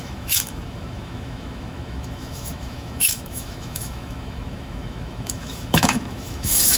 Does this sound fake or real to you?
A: fake